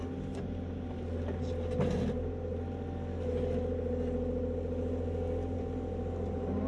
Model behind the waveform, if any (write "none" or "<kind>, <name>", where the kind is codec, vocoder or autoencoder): none